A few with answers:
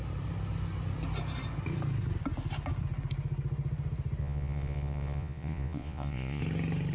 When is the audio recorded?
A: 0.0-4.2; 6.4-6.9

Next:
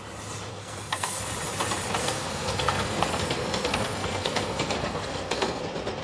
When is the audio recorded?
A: 0.0-0.5; 1.2-2.0; 5.6-6.0